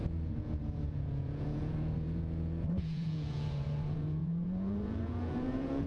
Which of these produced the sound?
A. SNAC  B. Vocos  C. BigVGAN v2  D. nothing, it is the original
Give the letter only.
B